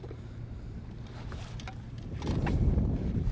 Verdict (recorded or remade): remade